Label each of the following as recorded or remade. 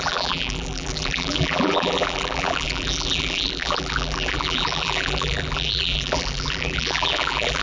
remade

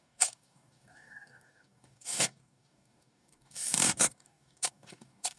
remade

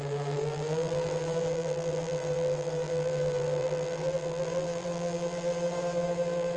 remade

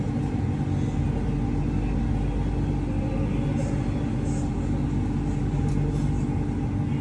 recorded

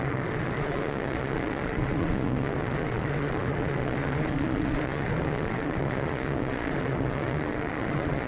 remade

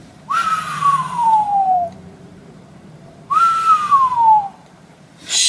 remade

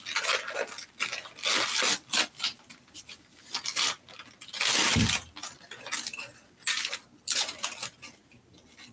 recorded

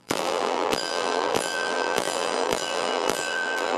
remade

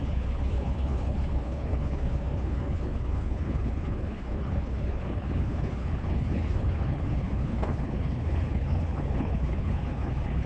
remade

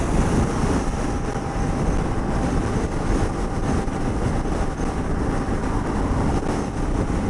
recorded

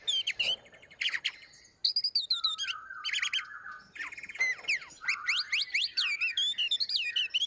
recorded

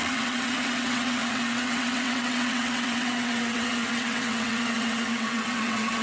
remade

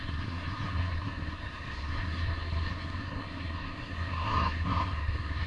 remade